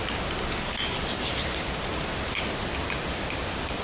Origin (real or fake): real